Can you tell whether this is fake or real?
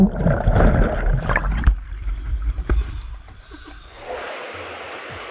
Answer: real